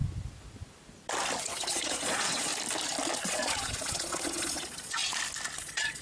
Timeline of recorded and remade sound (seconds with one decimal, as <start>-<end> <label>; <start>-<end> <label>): 0.0-1.4 recorded; 1.4-2.5 remade; 2.5-3.2 recorded; 3.2-5.0 remade; 5.0-5.6 recorded; 5.6-6.0 remade

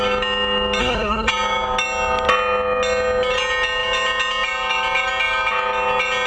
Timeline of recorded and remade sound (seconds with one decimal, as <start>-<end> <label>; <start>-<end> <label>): 0.0-0.8 recorded; 0.8-1.3 remade; 1.3-6.3 recorded

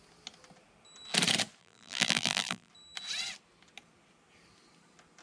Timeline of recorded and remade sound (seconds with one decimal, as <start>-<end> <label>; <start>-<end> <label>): 0.0-1.6 recorded; 1.6-2.7 remade; 2.7-5.2 recorded

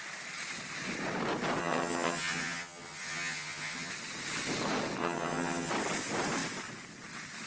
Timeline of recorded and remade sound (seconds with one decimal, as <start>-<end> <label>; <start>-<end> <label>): 0.0-1.6 recorded; 1.6-3.9 remade; 3.9-5.0 recorded; 5.0-5.7 remade; 5.7-7.5 recorded

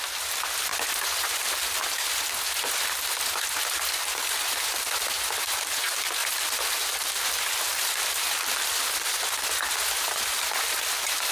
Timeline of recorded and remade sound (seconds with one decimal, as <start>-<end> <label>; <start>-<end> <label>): 0.0-6.2 recorded; 6.2-6.9 remade; 6.9-7.7 recorded; 7.7-8.7 remade; 8.7-11.3 recorded

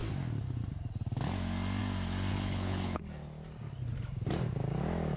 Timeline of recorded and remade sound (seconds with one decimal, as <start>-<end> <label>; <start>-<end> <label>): 0.0-2.3 recorded; 2.3-3.0 remade; 3.0-5.2 recorded

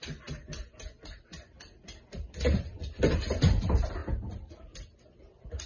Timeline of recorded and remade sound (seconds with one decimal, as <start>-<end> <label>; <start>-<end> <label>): 0.0-5.7 recorded

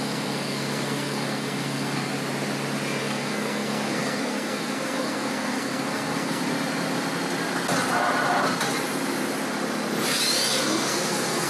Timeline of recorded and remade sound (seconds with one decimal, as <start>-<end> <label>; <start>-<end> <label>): 0.0-2.1 remade; 2.1-3.0 recorded; 3.0-6.4 remade; 6.4-10.6 recorded; 10.6-11.5 remade